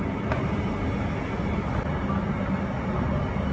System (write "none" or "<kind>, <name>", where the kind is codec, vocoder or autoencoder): none